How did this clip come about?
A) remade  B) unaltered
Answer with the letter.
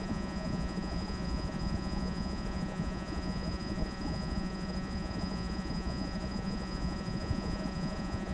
A